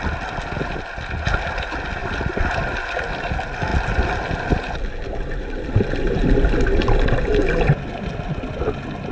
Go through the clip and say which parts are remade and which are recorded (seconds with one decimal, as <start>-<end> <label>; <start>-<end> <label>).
0.0-9.1 recorded